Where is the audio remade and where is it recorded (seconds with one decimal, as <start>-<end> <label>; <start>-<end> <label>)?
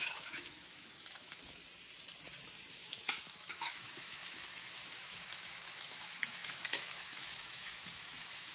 0.0-1.6 remade; 1.6-2.7 recorded; 2.7-8.5 remade